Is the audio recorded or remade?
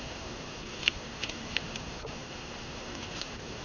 remade